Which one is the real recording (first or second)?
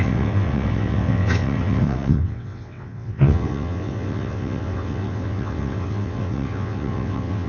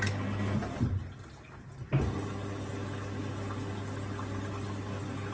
second